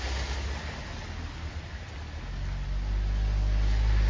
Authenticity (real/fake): real